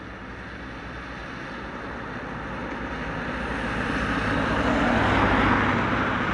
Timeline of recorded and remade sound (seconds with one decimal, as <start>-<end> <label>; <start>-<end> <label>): 0.0-1.2 recorded; 1.2-1.8 remade; 1.8-2.6 recorded; 2.6-4.9 remade; 4.9-6.3 recorded